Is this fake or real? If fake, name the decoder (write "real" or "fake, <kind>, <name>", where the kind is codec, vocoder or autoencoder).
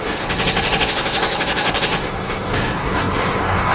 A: fake, codec, SNAC